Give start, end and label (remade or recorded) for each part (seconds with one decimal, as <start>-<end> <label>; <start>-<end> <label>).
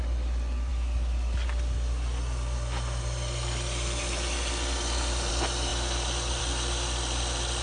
0.0-7.6 recorded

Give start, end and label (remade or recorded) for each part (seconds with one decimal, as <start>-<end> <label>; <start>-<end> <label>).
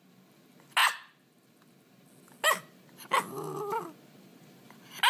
0.0-5.1 recorded